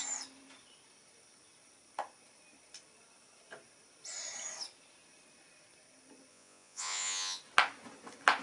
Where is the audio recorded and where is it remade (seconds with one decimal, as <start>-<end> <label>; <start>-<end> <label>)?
0.0-6.3 recorded; 6.3-7.4 remade; 7.4-8.4 recorded